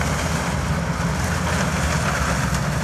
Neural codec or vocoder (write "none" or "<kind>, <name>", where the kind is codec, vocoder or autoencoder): none